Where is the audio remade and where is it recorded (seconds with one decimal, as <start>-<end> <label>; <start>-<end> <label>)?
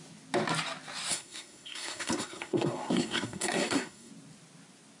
0.0-1.1 recorded; 1.1-4.1 remade; 4.1-5.0 recorded